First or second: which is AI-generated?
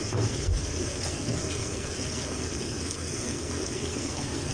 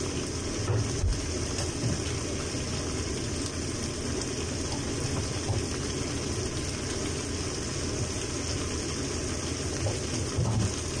first